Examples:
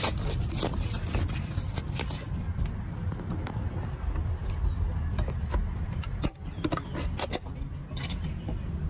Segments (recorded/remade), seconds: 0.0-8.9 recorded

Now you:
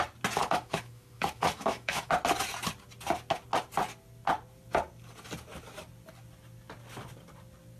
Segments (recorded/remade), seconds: 0.0-0.4 recorded; 0.4-2.1 remade; 2.1-7.8 recorded